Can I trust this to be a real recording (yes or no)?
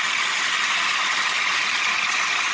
yes